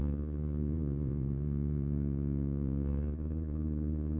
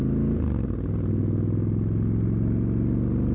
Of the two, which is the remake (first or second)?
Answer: first